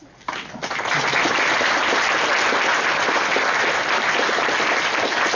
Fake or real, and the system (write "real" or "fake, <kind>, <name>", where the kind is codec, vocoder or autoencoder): real